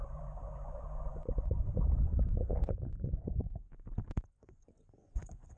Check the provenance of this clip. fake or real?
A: fake